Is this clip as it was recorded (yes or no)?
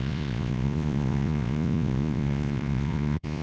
no